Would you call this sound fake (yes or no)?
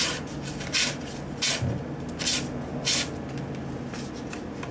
no